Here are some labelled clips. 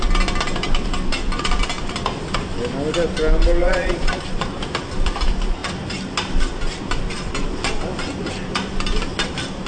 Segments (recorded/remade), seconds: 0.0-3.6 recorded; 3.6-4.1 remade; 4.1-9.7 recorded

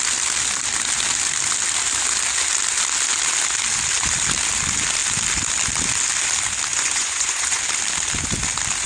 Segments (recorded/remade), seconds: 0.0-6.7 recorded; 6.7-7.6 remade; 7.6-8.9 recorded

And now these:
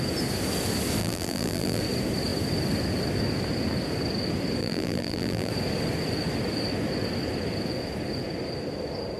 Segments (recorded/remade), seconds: 0.0-1.0 recorded; 1.0-1.8 remade; 1.8-4.6 recorded; 4.6-5.5 remade; 5.5-9.2 recorded

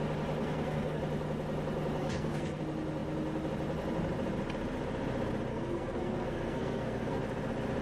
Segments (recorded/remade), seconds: 0.0-0.4 recorded; 0.4-1.0 remade; 1.0-2.0 recorded; 2.0-2.6 remade; 2.6-5.5 recorded; 5.5-7.2 remade; 7.2-7.8 recorded

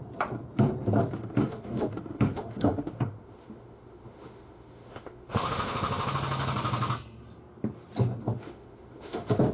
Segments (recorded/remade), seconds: 0.0-1.2 recorded; 1.2-6.1 remade; 6.1-8.3 recorded; 8.3-9.5 remade

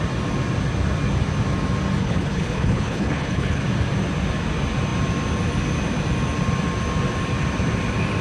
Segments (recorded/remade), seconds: 0.0-2.0 recorded; 2.0-3.6 remade; 3.6-8.2 recorded

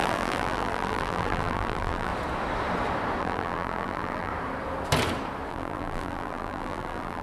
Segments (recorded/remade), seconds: 0.0-2.1 remade; 2.1-3.2 recorded; 3.2-4.3 remade; 4.3-5.5 recorded; 5.5-7.2 remade

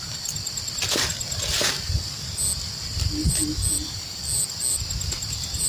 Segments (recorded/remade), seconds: 0.0-5.7 recorded